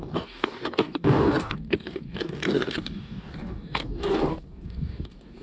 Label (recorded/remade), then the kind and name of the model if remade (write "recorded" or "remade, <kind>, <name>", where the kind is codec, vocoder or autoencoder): remade, codec, DAC